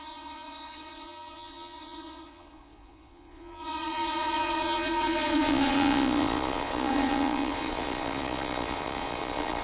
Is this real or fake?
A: fake